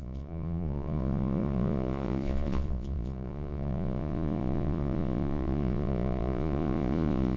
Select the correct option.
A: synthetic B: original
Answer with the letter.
A